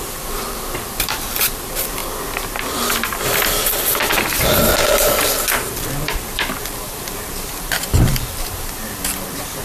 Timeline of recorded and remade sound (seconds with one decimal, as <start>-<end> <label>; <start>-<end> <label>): 0.0-2.0 remade; 2.0-4.2 recorded; 4.2-9.6 remade